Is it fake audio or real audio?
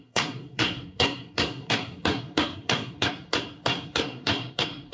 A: fake